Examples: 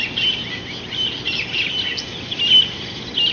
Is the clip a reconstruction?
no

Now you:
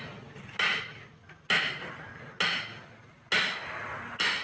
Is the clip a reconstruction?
no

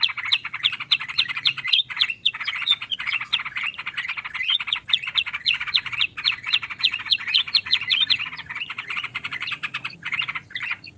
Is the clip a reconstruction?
yes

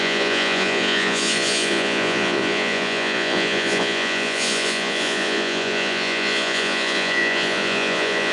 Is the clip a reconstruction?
yes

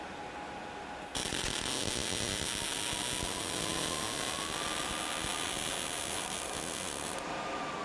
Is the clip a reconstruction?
no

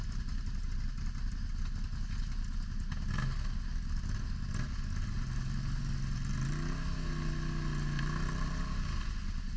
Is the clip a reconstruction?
no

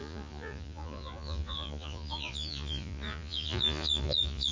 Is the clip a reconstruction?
yes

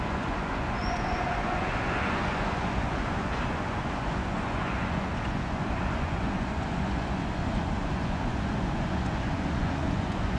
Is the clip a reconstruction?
yes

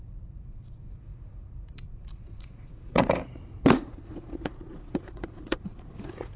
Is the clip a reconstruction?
yes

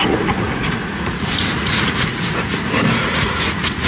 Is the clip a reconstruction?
yes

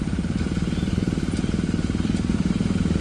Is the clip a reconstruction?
no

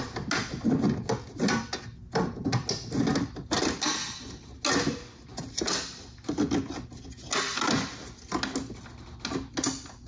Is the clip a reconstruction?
no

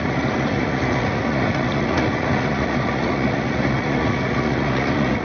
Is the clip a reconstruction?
yes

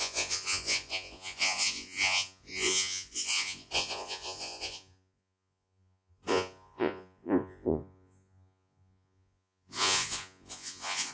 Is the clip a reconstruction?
yes